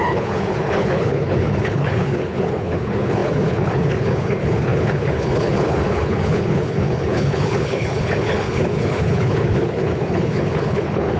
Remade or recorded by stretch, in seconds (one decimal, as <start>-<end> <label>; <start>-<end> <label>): 0.0-11.2 remade